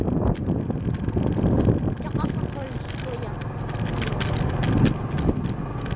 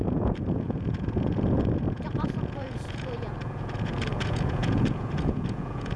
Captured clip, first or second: first